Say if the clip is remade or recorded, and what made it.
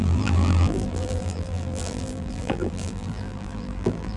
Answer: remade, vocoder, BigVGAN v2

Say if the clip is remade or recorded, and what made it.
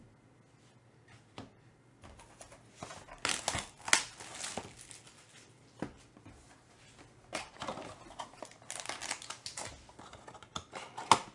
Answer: recorded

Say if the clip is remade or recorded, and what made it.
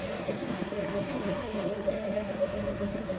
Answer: remade, codec, SNAC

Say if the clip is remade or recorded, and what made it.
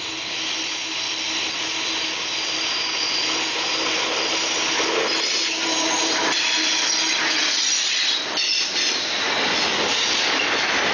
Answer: recorded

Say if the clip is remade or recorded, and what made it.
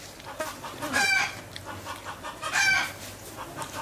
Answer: recorded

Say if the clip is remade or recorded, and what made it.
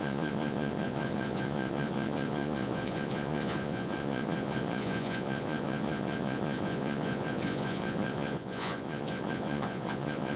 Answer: remade, vocoder, Vocos